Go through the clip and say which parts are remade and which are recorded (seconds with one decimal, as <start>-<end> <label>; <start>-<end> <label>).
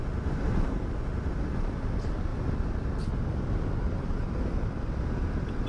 0.0-5.7 recorded